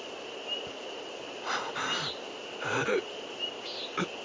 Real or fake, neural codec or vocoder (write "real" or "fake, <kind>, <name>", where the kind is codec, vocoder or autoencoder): real